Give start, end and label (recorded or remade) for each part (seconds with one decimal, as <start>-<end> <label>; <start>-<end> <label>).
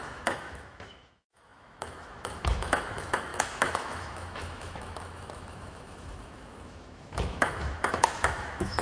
0.0-8.8 remade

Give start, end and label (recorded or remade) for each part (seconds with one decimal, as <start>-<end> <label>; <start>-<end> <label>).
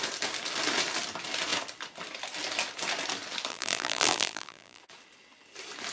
0.0-3.5 recorded; 3.5-4.8 remade; 4.8-5.9 recorded